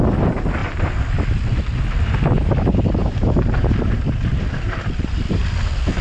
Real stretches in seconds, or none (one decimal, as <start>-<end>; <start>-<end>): 0.0-3.0; 5.4-6.0